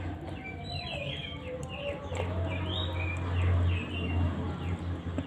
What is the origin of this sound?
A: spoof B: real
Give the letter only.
B